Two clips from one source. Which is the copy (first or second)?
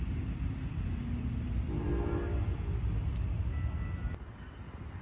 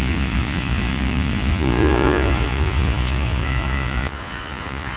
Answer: second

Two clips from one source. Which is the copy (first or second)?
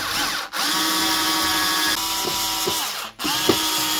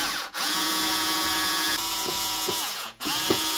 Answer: second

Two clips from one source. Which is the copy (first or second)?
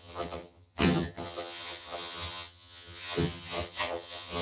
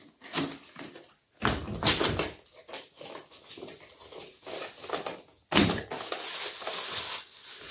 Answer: first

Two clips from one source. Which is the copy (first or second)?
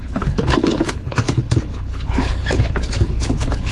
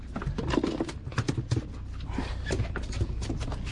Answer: first